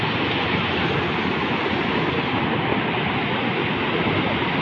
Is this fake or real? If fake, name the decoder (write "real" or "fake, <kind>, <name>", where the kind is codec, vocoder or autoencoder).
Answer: real